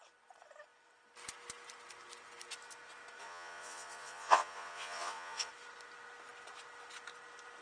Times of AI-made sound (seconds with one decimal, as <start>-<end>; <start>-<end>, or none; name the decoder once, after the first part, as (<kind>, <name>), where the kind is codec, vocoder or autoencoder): 3.2-5.5 (vocoder, Vocos)